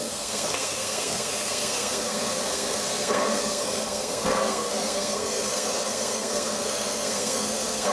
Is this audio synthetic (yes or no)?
yes